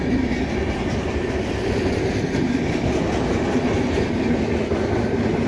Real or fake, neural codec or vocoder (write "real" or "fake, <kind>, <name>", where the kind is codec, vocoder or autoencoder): real